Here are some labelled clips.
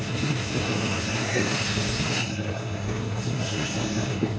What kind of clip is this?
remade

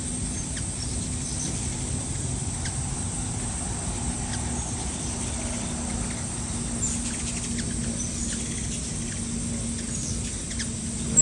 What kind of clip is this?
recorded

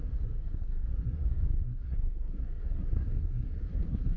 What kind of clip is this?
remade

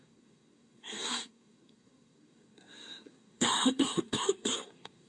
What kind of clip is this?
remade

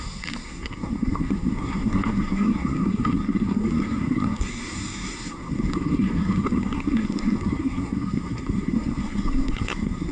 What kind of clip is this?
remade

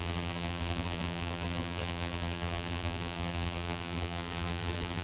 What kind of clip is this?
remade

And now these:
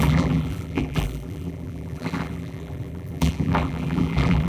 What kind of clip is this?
remade